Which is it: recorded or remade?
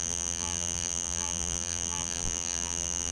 remade